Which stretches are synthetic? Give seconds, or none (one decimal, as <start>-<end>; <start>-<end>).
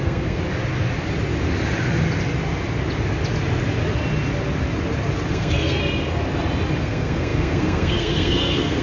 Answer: 0.0-0.4; 5.3-5.8; 6.8-8.8